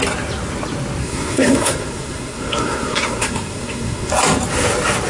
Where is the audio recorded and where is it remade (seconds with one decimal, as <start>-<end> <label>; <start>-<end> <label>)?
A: 0.0-1.0 recorded; 1.0-4.1 remade; 4.1-5.1 recorded